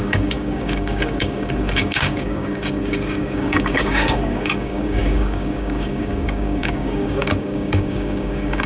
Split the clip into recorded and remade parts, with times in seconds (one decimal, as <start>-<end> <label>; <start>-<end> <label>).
0.0-8.7 remade